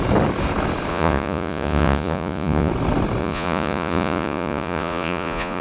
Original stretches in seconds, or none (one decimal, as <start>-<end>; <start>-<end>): 0.0-0.9; 2.7-3.2